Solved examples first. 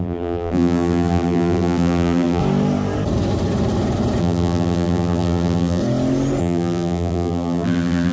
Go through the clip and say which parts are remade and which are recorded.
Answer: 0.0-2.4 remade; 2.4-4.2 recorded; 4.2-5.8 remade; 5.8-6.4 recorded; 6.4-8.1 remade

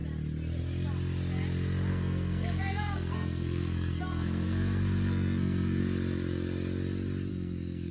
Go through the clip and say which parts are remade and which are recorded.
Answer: 0.0-1.9 recorded; 1.9-5.8 remade; 5.8-7.3 recorded; 7.3-7.9 remade

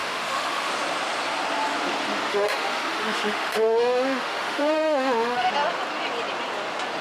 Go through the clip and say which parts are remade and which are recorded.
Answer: 0.0-0.7 remade; 0.7-2.3 recorded; 2.3-5.5 remade; 5.5-7.0 recorded

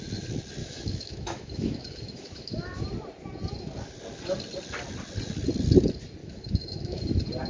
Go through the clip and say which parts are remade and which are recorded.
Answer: 0.0-0.6 recorded; 0.6-2.8 remade; 2.8-6.2 recorded; 6.2-7.0 remade; 7.0-7.5 recorded

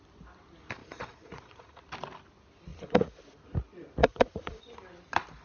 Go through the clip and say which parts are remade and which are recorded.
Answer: 0.0-0.8 recorded; 0.8-1.8 remade; 1.8-2.7 recorded; 2.7-3.2 remade; 3.2-4.0 recorded; 4.0-4.6 remade; 4.6-5.4 recorded

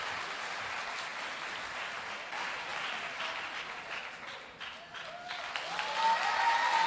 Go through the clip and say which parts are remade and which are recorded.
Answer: 0.0-6.9 recorded